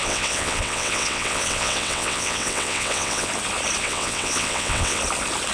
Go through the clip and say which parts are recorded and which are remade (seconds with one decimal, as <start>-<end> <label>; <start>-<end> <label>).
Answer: 0.0-3.3 remade; 3.3-3.8 recorded; 3.8-5.0 remade; 5.0-5.5 recorded